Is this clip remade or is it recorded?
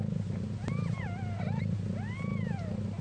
recorded